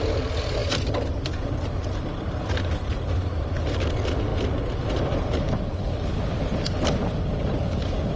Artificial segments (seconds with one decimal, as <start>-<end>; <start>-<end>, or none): 0.6-3.6